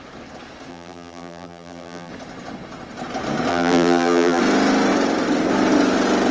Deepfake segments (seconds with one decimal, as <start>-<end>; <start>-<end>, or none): 0.7-2.1; 3.5-4.4